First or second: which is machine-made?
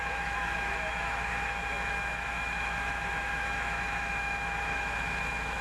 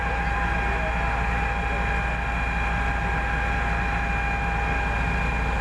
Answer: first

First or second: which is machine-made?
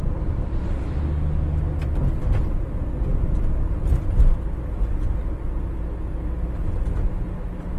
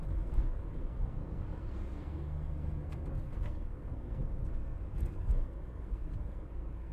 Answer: second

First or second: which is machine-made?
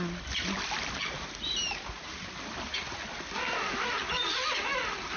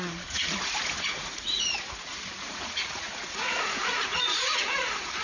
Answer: second